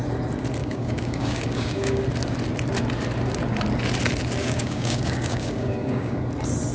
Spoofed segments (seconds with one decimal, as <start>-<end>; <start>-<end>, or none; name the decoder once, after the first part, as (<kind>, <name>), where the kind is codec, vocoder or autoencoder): 0.6-2.0 (codec, DAC); 4.4-6.2